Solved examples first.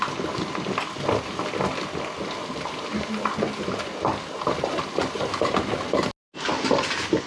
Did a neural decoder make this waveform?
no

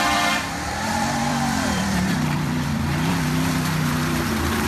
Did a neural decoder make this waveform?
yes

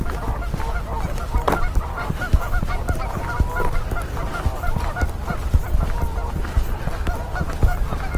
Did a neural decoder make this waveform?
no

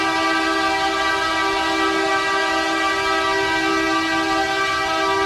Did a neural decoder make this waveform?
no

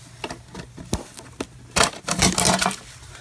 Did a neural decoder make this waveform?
no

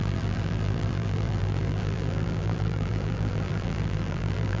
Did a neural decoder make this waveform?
yes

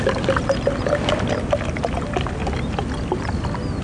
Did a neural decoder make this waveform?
no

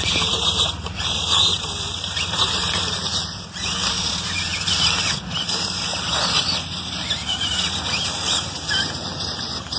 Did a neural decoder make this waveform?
yes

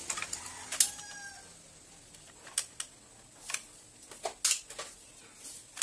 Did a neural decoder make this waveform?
no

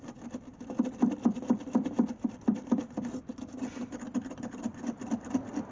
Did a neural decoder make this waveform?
no